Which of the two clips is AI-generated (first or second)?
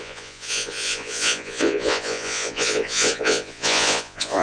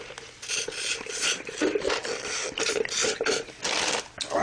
first